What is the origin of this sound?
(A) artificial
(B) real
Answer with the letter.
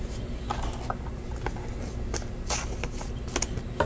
B